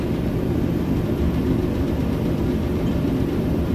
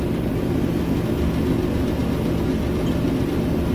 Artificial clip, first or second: first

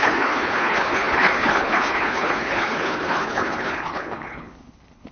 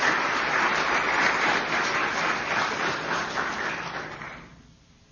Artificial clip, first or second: first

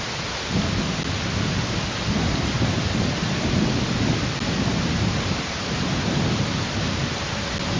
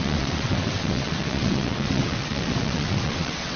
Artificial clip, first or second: second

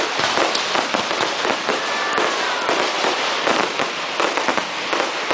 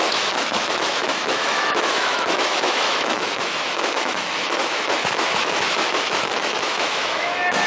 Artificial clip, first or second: second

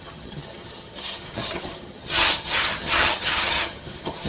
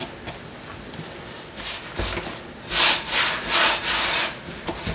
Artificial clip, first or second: first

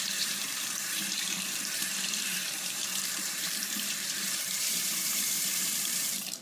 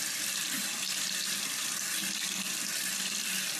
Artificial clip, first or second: first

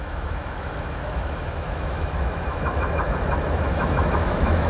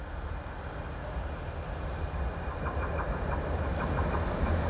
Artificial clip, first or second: first